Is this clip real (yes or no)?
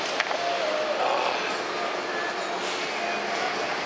yes